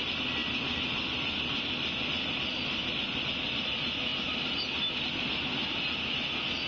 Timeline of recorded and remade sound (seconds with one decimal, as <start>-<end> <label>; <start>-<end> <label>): 0.0-6.7 recorded